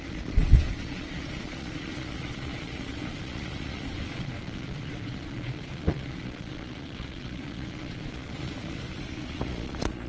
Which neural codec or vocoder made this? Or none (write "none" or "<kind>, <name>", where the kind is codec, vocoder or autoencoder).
vocoder, Vocos